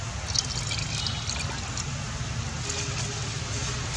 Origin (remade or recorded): recorded